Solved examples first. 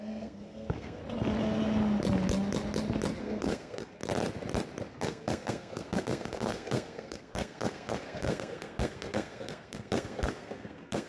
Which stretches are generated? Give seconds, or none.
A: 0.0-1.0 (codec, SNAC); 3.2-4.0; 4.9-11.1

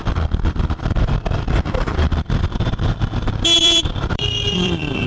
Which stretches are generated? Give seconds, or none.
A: 0.0-1.5 (vocoder, BigVGAN v2); 1.9-5.1

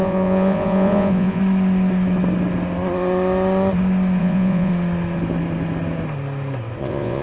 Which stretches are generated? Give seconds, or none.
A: 0.0-1.4 (vocoder, Vocos); 4.2-4.7; 6.8-7.2

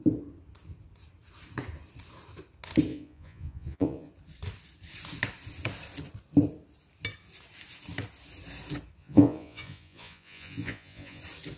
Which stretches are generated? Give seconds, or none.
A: 2.9-4.1 (vocoder, Vocos); 9.0-11.2

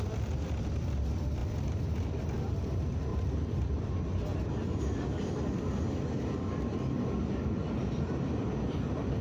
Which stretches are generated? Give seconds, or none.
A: 3.1-5.4 (vocoder, BigVGAN v2)

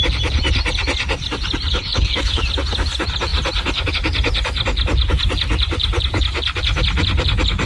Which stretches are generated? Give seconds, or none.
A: 1.7-2.4 (codec, HILCodec)